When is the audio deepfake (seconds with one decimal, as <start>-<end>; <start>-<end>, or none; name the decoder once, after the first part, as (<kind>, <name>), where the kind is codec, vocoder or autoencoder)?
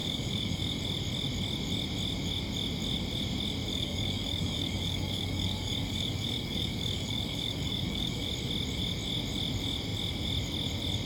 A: 0.0-0.8 (codec, DAC); 3.7-8.3